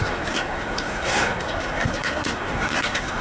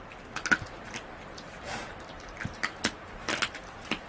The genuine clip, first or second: second